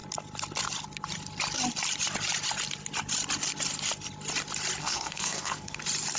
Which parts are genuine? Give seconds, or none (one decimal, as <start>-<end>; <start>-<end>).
0.0-4.8; 5.8-6.2